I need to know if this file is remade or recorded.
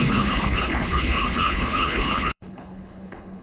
remade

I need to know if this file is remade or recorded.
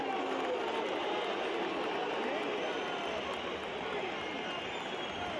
recorded